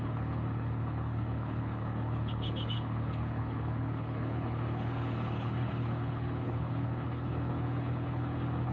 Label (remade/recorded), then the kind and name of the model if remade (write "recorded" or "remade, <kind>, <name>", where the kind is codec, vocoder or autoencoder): remade, codec, HILCodec